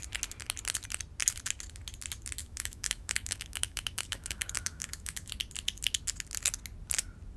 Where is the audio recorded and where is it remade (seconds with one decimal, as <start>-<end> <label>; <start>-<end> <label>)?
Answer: 0.0-2.4 recorded; 2.4-5.3 remade; 5.3-7.4 recorded